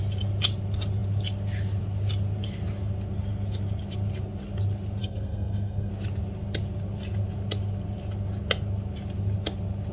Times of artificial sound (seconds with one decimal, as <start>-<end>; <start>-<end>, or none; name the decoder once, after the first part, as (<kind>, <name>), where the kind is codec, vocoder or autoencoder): 5.0-5.9 (codec, SNAC)

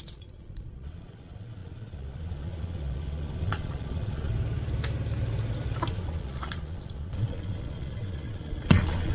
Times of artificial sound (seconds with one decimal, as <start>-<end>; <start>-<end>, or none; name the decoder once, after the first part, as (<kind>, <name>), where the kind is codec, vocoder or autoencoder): 0.0-4.3 (vocoder, Vocos); 5.9-9.1

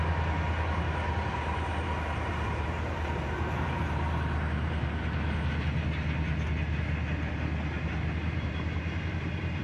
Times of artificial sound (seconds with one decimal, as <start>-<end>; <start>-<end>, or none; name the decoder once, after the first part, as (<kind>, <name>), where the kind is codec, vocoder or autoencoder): 1.3-4.9 (vocoder, BigVGAN v2); 8.2-8.8

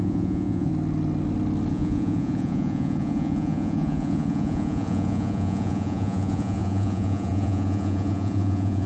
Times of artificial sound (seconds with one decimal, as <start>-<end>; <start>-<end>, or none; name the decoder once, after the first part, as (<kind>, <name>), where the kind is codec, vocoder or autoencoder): 0.0-0.7 (vocoder, Vocos); 1.7-8.9

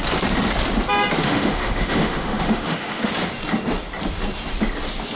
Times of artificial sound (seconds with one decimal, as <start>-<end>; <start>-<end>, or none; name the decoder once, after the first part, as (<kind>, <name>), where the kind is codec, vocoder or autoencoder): 1.2-3.1 (autoencoder, DAC-VAE)

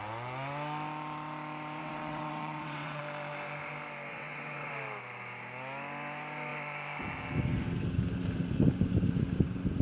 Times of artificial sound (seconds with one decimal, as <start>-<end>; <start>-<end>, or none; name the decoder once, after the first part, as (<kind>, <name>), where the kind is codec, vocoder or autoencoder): 1.8-3.0 (vocoder, WaveNeXt); 4.1-4.7